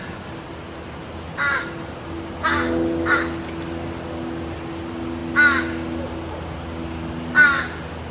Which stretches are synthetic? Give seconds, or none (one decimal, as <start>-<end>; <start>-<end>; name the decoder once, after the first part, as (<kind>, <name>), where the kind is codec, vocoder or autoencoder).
none